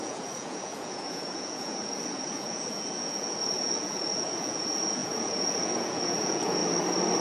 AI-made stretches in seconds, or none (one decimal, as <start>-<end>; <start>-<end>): 0.0-6.6